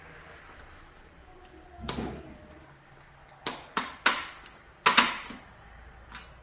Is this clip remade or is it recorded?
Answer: recorded